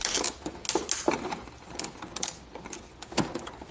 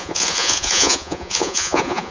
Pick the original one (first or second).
first